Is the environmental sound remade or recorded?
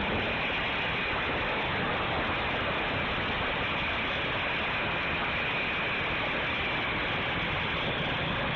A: recorded